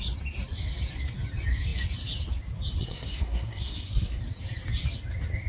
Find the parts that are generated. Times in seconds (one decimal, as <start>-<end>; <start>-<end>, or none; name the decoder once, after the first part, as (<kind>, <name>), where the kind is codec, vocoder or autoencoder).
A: 2.8-4.2 (codec, SNAC)